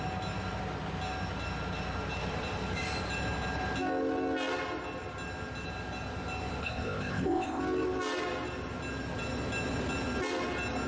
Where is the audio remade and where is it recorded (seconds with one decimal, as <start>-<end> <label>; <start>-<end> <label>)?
0.0-6.6 recorded; 6.6-7.6 remade; 7.6-10.9 recorded